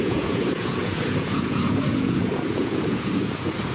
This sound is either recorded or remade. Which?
remade